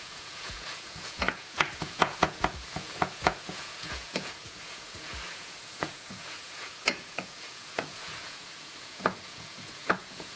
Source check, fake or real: fake